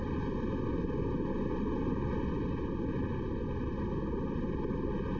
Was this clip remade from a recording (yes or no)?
no